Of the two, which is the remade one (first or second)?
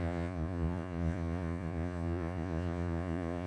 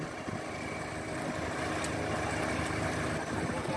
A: first